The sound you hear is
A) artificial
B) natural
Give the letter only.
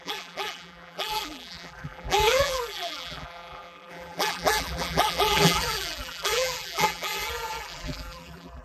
A